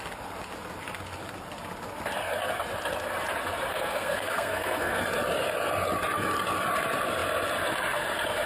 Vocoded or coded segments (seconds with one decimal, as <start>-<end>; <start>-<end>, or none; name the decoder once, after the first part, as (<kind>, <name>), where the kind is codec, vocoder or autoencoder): 3.7-5.0 (codec, SNAC)